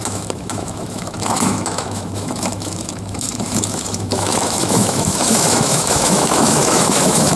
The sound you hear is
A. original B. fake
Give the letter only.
B